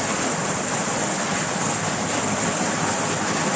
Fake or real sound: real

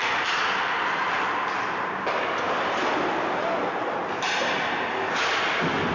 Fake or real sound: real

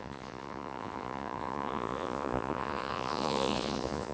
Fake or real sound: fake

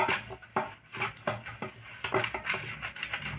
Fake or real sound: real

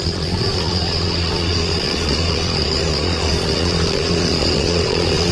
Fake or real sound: fake